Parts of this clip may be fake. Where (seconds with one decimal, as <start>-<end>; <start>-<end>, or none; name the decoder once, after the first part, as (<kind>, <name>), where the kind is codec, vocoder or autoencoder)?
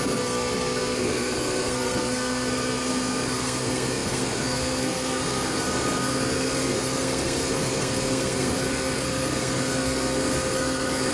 0.0-11.1 (codec, SNAC)